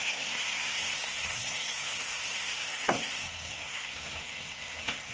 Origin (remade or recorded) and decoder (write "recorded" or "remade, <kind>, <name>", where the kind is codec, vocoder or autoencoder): remade, codec, SNAC